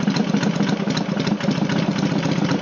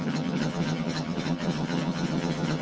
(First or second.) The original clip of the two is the first